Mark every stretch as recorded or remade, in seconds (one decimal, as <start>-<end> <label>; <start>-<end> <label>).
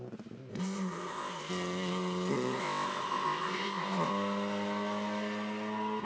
0.0-0.5 recorded; 0.5-1.5 remade; 1.5-2.3 recorded; 2.3-4.1 remade; 4.1-6.0 recorded